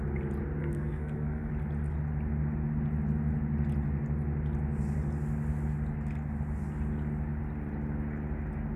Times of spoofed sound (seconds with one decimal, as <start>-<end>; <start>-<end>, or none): 0.6-1.5